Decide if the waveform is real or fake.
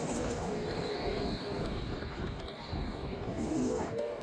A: fake